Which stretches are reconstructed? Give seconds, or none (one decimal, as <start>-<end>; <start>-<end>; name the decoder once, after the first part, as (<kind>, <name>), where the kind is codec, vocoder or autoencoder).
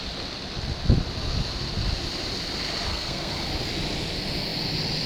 2.9-3.5 (codec, SNAC)